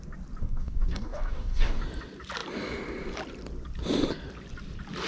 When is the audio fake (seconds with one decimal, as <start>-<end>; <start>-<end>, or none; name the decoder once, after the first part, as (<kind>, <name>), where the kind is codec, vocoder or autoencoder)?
0.4-1.8 (codec, DAC)